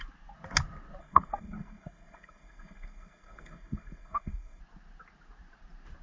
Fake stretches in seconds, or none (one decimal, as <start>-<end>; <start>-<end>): 1.0-4.6